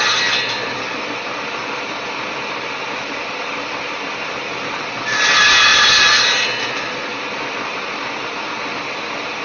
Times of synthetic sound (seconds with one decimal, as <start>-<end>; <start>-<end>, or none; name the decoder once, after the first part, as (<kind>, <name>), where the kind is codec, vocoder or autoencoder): none